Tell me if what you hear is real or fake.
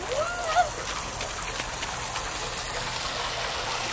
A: real